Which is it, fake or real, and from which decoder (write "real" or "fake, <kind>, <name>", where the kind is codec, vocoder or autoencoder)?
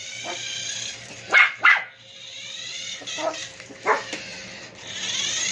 fake, vocoder, BigVGAN v2